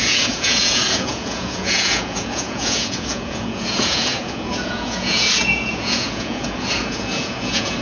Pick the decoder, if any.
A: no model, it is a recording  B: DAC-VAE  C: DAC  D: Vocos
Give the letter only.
D